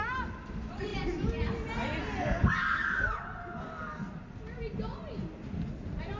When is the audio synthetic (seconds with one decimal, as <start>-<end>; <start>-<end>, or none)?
none